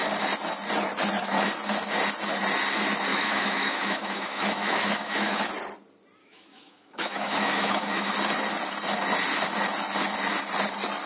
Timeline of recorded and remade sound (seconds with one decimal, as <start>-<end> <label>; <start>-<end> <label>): 0.0-3.1 recorded; 3.1-5.5 remade; 5.5-6.2 recorded; 6.2-8.1 remade; 8.1-11.1 recorded